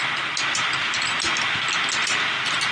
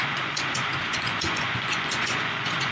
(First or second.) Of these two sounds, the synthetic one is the second